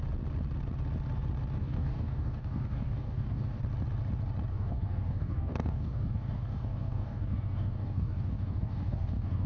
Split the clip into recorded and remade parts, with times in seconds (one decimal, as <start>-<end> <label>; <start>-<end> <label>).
0.0-1.6 recorded; 1.6-3.6 remade; 3.6-4.5 recorded; 4.5-9.5 remade